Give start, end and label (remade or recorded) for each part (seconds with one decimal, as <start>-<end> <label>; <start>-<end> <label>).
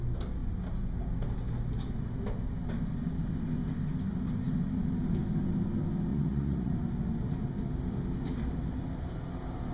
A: 0.0-6.1 recorded; 6.1-6.7 remade; 6.7-9.7 recorded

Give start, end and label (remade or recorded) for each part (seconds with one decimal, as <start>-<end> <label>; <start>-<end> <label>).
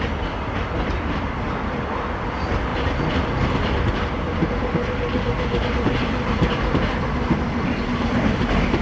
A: 0.0-8.8 recorded